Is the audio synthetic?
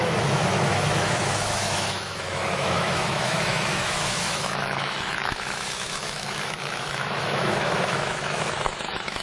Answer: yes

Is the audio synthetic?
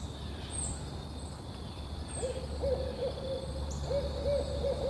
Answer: no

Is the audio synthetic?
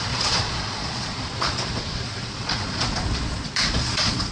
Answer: yes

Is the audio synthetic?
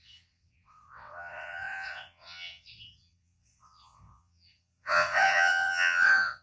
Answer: yes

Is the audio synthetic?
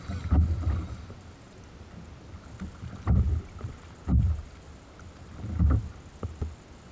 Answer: no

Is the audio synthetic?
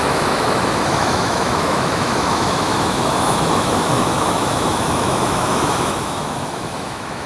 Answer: yes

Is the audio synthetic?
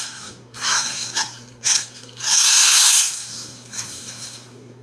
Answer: yes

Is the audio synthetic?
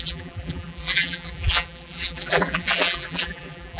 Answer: yes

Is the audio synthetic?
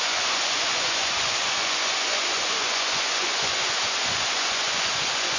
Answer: yes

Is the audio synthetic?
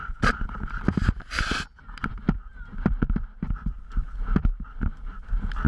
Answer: no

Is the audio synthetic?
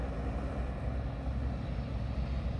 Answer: no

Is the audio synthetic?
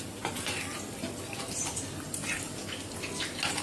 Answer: no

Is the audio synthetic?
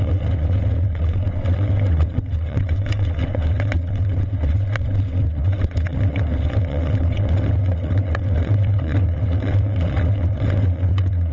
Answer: yes